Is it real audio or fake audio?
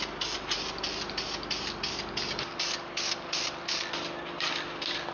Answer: real